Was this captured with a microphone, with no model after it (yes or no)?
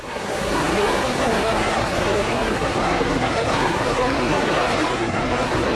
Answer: no